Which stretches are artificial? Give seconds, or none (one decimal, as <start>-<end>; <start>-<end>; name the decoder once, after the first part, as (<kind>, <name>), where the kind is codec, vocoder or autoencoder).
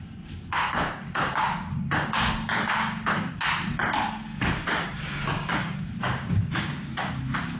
0.6-3.3 (codec, DAC); 4.8-7.1